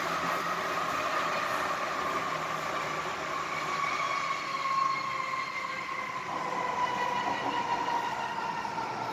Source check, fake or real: real